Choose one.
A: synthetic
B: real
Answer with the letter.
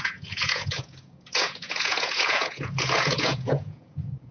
A